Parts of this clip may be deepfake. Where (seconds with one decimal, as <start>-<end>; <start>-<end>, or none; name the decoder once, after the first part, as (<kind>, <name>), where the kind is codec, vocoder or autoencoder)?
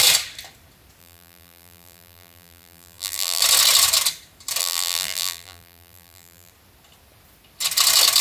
1.0-3.4 (vocoder, BigVGAN v2); 4.6-6.5